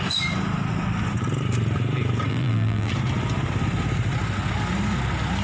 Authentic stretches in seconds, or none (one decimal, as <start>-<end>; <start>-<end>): 0.0-2.3; 2.9-5.4